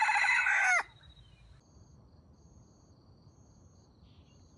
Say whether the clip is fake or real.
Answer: real